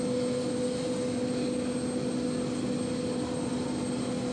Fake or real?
real